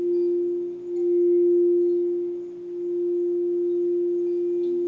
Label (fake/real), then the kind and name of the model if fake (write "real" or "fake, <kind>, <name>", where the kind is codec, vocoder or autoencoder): real